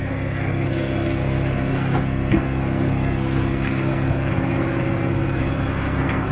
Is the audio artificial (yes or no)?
yes